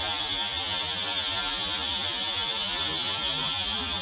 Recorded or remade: recorded